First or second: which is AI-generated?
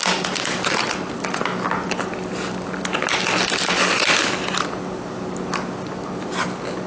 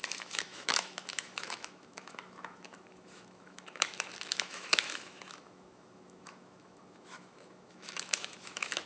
second